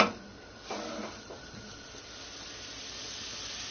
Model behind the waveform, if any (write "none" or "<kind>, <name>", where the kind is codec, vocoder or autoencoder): none